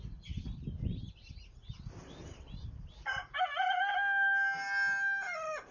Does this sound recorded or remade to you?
recorded